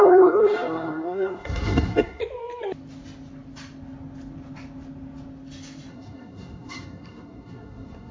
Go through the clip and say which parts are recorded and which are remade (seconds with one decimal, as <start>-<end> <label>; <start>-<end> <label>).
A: 0.0-2.2 remade; 2.2-5.9 recorded; 5.9-8.1 remade